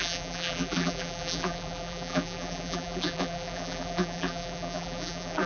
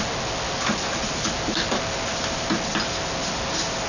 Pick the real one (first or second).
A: second